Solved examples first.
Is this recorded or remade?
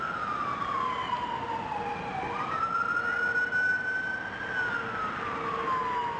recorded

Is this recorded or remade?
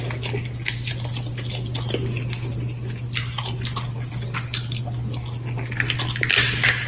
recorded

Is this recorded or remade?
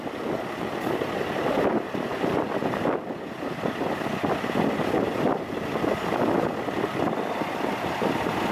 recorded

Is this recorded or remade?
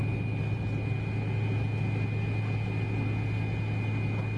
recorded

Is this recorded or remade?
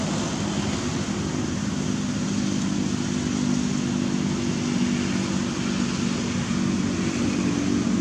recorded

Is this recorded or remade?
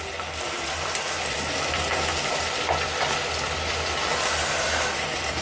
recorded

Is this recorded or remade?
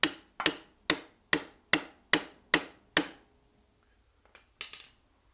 recorded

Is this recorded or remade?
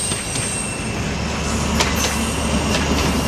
recorded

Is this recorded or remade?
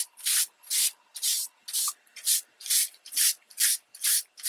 remade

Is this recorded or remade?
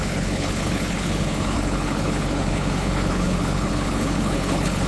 remade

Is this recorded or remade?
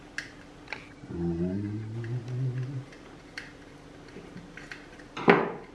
recorded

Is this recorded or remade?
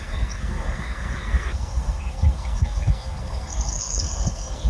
remade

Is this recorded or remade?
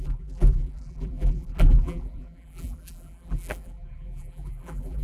remade